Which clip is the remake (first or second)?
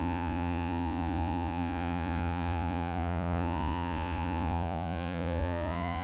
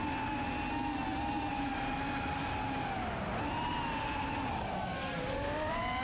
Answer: first